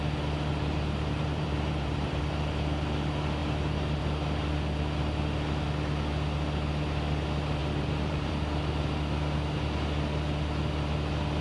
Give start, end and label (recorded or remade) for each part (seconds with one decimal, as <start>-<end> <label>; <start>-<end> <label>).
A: 0.0-0.5 recorded; 0.5-2.2 remade; 2.2-7.6 recorded; 7.6-8.3 remade; 8.3-11.4 recorded